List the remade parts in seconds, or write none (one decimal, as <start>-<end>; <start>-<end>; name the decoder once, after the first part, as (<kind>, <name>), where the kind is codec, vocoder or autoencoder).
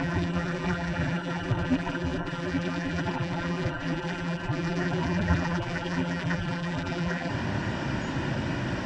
0.0-7.3 (vocoder, BigVGAN v2)